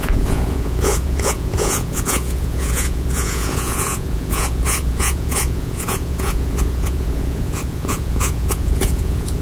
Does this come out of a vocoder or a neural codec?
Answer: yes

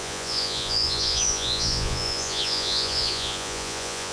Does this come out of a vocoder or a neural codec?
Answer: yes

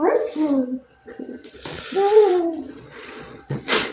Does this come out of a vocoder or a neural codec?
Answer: yes